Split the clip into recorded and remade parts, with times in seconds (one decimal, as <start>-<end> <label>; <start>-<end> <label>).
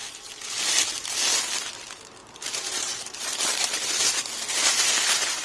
0.0-2.2 recorded; 2.2-3.9 remade; 3.9-5.4 recorded